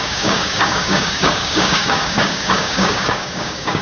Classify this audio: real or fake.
fake